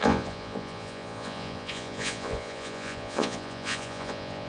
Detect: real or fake fake